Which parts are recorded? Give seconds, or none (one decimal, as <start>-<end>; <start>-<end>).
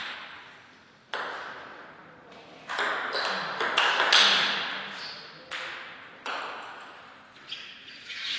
0.0-8.4